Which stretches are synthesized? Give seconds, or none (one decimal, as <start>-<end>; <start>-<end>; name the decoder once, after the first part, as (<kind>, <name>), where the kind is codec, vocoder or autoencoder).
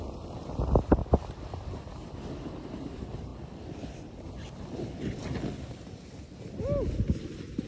none